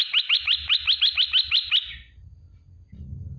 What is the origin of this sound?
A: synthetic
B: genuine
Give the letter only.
B